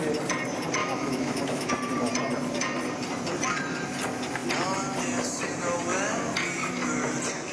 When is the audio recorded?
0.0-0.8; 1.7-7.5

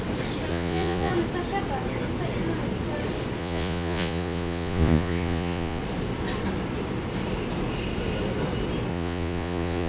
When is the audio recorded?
0.0-0.5; 1.1-3.4; 5.8-8.9

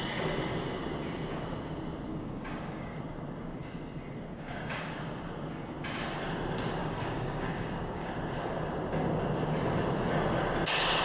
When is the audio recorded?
0.0-2.1; 3.0-4.3; 4.9-6.8; 8.1-11.0

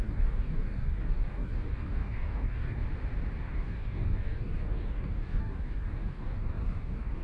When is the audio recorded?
2.8-3.4

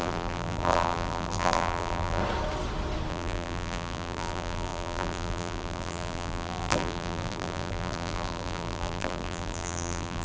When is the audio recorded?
2.2-3.1

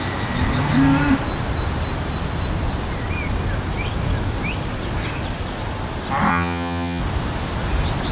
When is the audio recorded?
0.0-6.3; 7.0-8.1

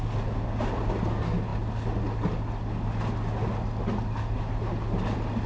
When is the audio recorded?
0.0-5.5

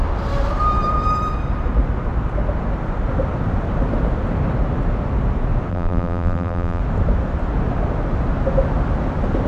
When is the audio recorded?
0.0-5.7; 6.8-9.5